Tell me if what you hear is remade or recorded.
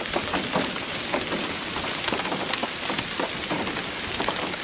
remade